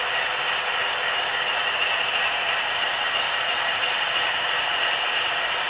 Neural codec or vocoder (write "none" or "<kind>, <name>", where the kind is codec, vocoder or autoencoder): none